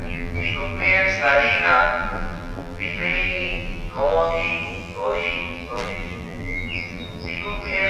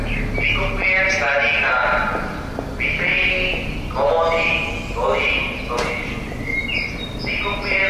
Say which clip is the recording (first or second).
second